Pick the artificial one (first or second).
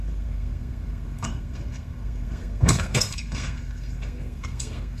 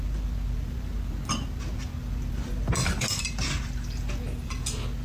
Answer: first